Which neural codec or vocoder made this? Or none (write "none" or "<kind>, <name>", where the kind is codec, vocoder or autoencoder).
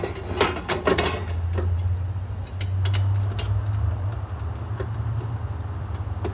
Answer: none